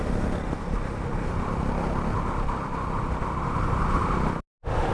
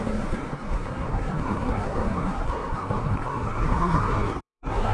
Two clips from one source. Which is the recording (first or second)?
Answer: first